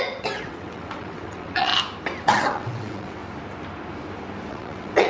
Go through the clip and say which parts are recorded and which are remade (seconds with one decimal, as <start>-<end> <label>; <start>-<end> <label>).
0.0-1.7 remade; 1.7-2.2 recorded; 2.2-3.2 remade; 3.2-4.5 recorded; 4.5-5.1 remade